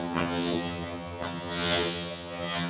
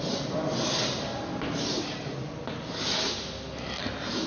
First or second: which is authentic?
second